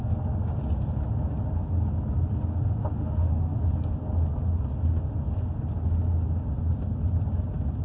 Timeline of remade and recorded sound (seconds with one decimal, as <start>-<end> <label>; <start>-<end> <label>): 0.0-2.9 recorded; 2.9-3.6 remade; 3.6-7.8 recorded